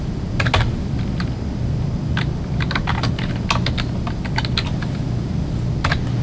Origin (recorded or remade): recorded